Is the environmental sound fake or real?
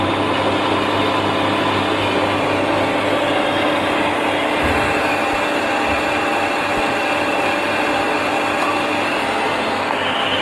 real